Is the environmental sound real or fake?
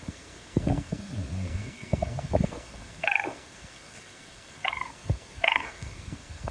fake